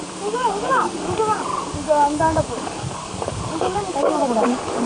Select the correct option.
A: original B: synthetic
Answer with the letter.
B